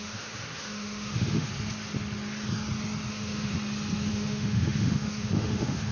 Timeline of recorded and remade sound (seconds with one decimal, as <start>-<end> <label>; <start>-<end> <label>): 0.0-1.5 remade; 1.5-3.1 recorded; 3.1-3.5 remade; 3.5-4.1 recorded; 4.1-5.9 remade